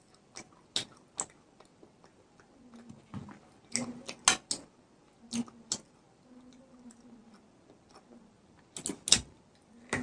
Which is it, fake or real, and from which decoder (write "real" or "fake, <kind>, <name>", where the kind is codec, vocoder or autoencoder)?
real